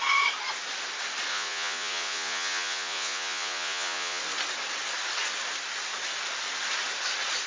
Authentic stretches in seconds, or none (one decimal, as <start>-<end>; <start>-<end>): 0.0-1.3; 4.2-7.5